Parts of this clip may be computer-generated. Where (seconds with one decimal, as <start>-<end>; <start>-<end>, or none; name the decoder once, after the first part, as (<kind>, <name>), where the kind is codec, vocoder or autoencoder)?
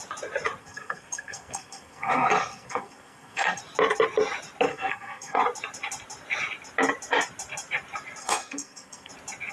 0.6-3.6 (codec, SNAC); 4.7-5.4; 8.2-9.1